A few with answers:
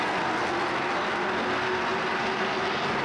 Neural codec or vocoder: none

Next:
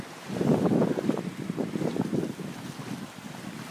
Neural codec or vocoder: none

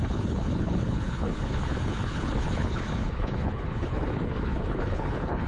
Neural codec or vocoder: codec, HILCodec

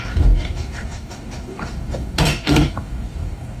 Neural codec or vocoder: codec, DAC